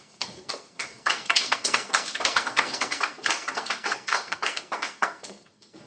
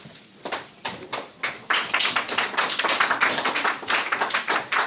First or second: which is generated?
first